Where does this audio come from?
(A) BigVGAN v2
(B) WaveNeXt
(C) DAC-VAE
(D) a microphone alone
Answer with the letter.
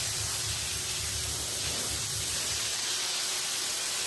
D